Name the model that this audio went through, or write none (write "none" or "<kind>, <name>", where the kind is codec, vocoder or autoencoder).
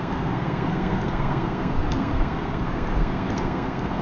codec, SNAC